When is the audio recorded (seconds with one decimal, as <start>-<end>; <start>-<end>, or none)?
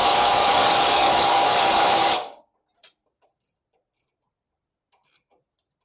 2.1-5.8